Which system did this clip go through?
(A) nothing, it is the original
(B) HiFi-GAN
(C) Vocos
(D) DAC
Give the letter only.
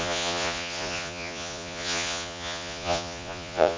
C